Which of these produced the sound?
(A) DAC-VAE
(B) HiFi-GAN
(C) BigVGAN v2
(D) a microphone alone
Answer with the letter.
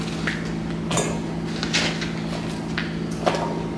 D